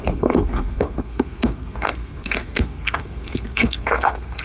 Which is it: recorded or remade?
remade